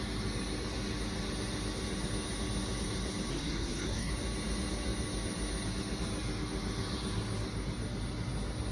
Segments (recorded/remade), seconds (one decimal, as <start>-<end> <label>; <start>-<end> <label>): 0.0-3.3 recorded; 3.3-4.1 remade; 4.1-8.7 recorded